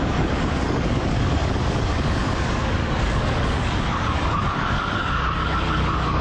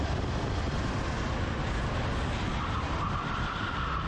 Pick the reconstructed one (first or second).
first